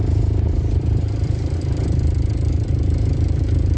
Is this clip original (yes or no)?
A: no